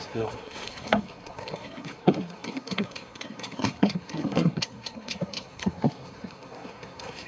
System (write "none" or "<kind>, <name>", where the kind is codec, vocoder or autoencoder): codec, SNAC